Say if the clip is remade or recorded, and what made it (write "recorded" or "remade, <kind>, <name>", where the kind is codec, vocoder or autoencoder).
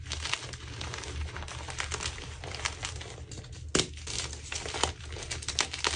recorded